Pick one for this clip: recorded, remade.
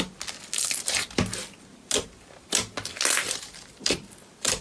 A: recorded